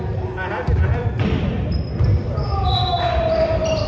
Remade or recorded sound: remade